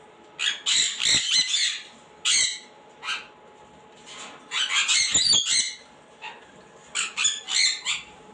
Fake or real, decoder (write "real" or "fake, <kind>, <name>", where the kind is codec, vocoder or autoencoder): real